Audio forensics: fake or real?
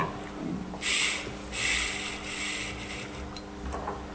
real